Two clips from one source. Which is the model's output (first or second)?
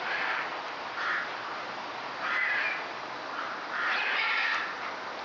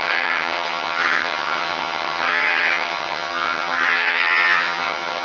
second